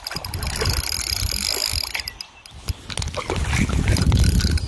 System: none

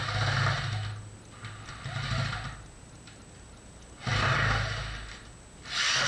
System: none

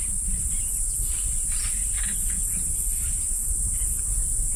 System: none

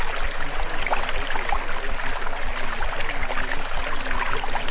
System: none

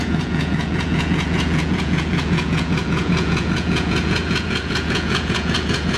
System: vocoder, Vocos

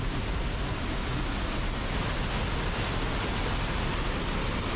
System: none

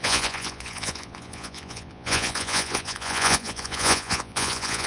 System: vocoder, Vocos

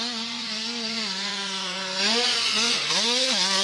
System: vocoder, Vocos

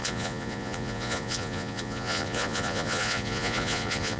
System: vocoder, Vocos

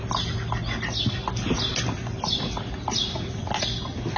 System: none